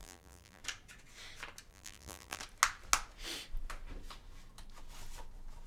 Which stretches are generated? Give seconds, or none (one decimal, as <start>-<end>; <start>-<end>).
0.0-0.6; 1.7-2.4